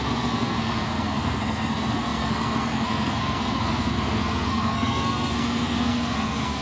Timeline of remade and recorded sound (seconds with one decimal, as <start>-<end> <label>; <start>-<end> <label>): 0.0-6.6 remade